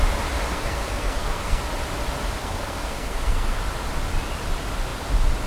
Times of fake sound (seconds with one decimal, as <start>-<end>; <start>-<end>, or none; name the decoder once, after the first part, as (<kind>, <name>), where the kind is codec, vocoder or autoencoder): 0.5-1.6 (codec, SNAC); 2.4-3.6